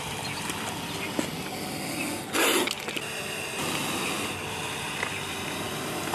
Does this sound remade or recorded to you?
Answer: recorded